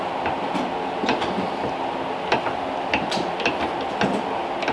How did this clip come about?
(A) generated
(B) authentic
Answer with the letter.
B